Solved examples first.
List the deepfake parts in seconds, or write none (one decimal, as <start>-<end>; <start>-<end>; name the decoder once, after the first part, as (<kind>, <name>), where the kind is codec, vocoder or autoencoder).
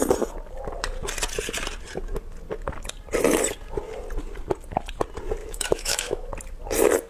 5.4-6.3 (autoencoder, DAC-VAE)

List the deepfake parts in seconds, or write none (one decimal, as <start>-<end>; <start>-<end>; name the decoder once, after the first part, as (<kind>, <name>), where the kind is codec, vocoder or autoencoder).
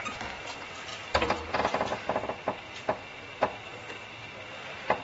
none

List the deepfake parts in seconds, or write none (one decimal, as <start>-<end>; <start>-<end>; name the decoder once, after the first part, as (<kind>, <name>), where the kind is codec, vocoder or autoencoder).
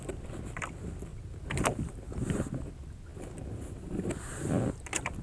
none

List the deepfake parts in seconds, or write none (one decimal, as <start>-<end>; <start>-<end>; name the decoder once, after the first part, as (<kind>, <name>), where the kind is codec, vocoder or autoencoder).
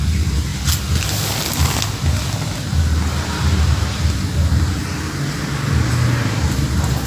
none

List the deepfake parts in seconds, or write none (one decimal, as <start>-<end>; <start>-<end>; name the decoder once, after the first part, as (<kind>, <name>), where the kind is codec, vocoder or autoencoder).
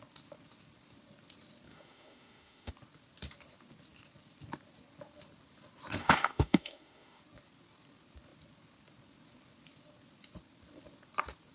1.7-2.7 (autoencoder, DAC-VAE); 6.0-7.2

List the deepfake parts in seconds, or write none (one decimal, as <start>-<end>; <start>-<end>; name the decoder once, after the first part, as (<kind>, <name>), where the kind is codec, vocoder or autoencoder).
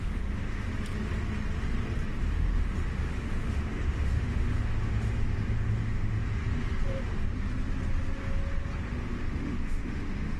0.0-0.7 (autoencoder, DAC-VAE); 2.3-6.2; 8.9-10.4